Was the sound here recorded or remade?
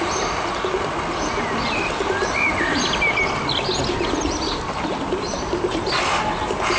recorded